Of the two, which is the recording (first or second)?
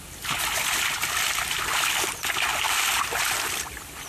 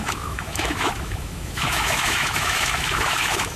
first